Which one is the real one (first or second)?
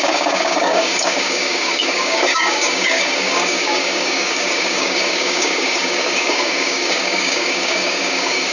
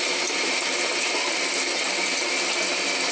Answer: second